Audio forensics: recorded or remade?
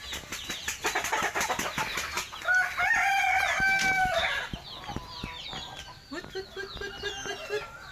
recorded